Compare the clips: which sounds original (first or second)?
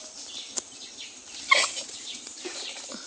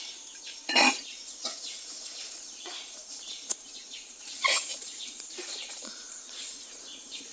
first